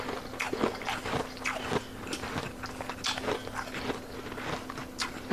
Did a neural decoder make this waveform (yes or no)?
no